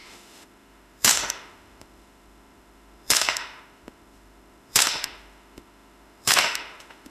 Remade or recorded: remade